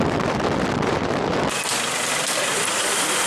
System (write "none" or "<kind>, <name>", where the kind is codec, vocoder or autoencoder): none